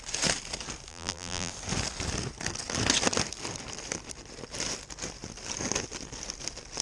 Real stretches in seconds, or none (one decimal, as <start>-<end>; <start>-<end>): 0.0-0.9; 1.5-6.8